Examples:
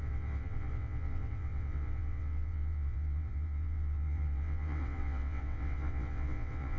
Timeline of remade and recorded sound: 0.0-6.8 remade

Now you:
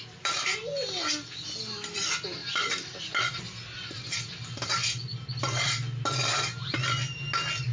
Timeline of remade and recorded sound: 0.0-7.7 recorded

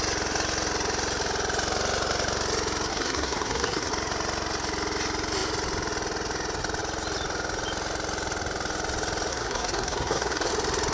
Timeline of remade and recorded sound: 0.0-2.9 recorded; 2.9-3.9 remade; 3.9-9.3 recorded; 9.3-10.5 remade; 10.5-10.9 recorded